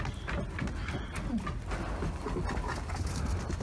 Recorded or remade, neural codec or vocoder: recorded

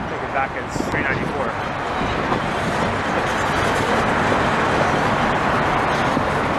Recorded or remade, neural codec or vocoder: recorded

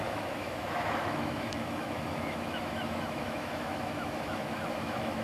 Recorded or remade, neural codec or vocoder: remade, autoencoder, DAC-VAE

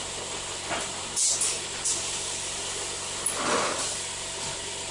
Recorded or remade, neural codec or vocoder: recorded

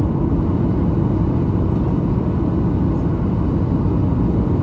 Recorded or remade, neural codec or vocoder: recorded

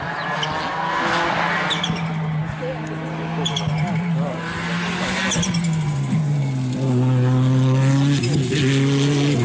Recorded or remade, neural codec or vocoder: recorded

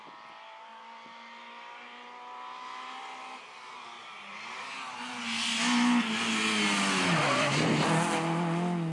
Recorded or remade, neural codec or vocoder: recorded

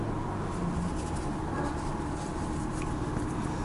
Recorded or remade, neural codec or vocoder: recorded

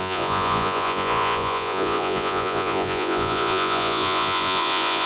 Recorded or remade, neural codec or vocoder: remade, vocoder, Vocos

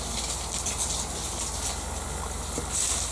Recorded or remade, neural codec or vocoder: recorded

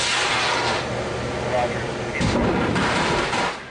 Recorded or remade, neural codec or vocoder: recorded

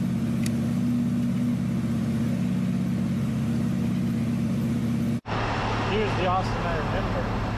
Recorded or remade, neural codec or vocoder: recorded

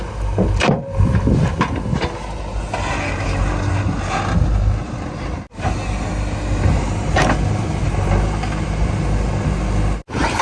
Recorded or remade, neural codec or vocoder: recorded